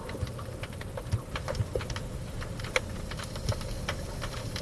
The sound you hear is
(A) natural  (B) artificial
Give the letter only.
A